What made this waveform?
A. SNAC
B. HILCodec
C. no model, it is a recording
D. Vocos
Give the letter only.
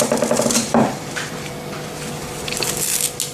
C